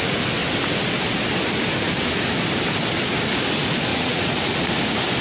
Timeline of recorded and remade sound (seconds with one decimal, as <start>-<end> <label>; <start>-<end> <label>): 0.0-3.9 recorded; 3.9-4.7 remade; 4.7-5.2 recorded